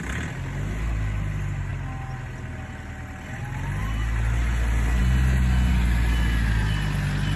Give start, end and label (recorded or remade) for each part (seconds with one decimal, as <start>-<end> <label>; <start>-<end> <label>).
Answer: 0.0-7.4 recorded